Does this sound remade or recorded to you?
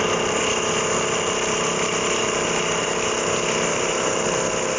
recorded